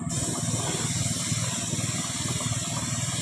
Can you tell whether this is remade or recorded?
recorded